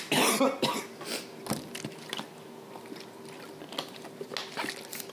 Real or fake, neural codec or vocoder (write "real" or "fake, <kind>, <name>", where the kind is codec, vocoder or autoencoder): real